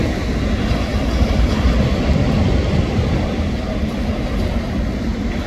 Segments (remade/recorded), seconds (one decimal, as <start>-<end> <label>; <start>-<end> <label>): 0.0-5.5 recorded